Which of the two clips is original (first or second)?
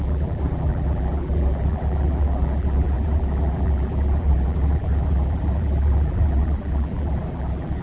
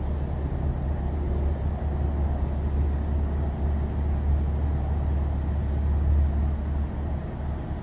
second